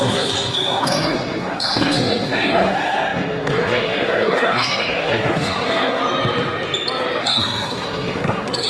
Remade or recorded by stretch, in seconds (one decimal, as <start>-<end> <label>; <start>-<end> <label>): 0.0-6.0 remade; 6.0-7.2 recorded; 7.2-8.7 remade